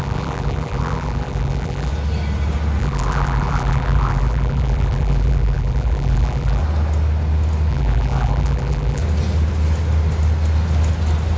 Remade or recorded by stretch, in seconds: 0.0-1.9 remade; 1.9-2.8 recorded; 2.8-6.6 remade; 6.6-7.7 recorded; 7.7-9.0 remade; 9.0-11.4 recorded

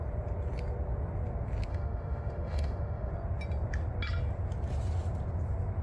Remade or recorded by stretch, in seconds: 0.0-1.7 recorded; 1.7-3.1 remade; 3.1-5.8 recorded

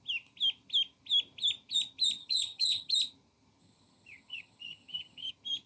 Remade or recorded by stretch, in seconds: 0.0-2.2 recorded; 2.2-2.9 remade; 2.9-3.6 recorded; 3.6-5.3 remade; 5.3-5.7 recorded

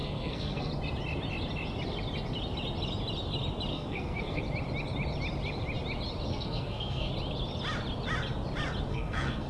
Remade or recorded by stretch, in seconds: 0.0-0.7 remade; 0.7-3.7 recorded; 3.7-4.4 remade; 4.4-6.3 recorded; 6.3-7.1 remade; 7.1-8.9 recorded; 8.9-9.5 remade

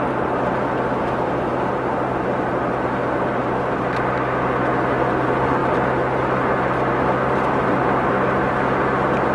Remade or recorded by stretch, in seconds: 0.0-9.3 recorded

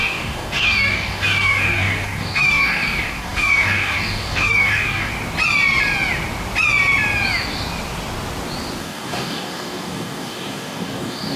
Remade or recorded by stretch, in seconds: 0.0-5.1 remade; 5.1-8.8 recorded; 8.8-11.4 remade

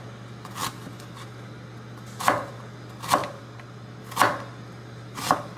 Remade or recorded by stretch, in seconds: 0.0-3.2 recorded; 3.2-4.0 remade; 4.0-5.6 recorded

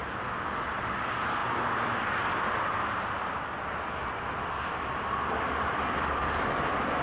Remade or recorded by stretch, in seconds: 0.0-7.0 recorded